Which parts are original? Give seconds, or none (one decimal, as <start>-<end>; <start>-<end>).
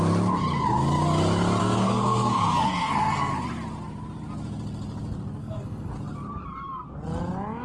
0.0-1.6; 3.3-5.4; 5.9-7.6